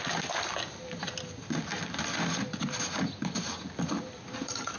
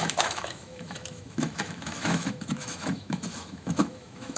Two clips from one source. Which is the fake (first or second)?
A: second